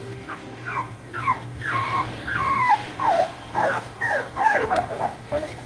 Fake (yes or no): yes